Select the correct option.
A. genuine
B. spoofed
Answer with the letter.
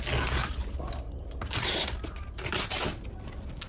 A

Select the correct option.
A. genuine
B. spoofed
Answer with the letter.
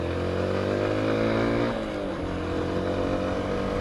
A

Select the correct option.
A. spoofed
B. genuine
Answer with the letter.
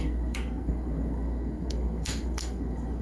A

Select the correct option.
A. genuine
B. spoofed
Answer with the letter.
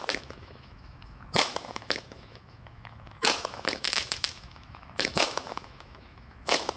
B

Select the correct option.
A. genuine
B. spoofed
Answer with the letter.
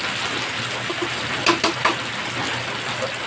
A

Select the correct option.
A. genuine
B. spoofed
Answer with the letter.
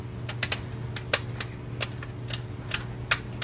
A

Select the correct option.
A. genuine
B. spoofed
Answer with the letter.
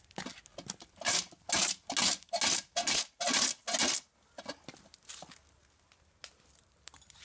A